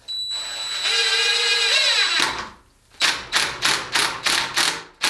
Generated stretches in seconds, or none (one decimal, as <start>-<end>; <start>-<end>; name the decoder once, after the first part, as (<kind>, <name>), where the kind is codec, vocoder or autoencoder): none